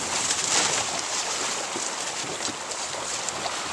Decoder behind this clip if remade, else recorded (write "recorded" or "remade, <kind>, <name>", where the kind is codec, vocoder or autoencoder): recorded